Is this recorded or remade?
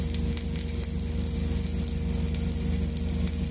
recorded